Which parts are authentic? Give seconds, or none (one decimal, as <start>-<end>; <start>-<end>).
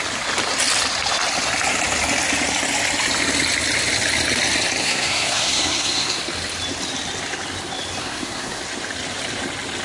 0.0-4.8; 6.2-8.0; 8.6-9.8